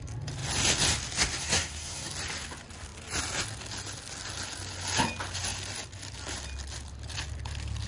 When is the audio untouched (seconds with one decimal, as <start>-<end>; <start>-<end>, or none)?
0.0-1.4; 2.1-7.9